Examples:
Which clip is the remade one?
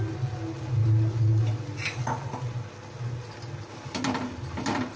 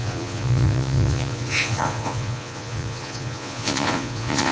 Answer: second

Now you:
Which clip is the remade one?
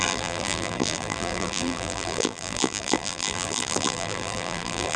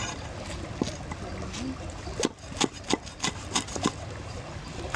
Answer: first